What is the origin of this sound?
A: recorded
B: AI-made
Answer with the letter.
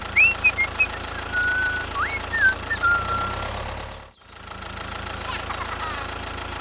A